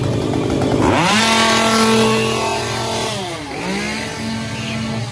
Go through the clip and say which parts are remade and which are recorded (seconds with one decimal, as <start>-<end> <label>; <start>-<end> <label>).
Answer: 0.0-1.2 remade; 1.2-2.5 recorded; 2.5-3.6 remade; 3.6-5.1 recorded